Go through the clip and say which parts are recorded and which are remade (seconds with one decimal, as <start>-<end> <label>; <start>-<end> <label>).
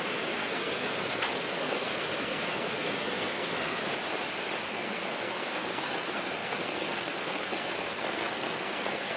0.0-3.8 remade; 3.8-4.7 recorded; 4.7-9.2 remade